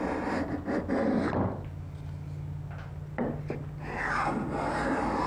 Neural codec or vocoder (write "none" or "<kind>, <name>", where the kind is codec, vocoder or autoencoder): none